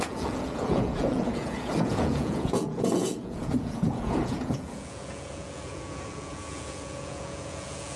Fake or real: fake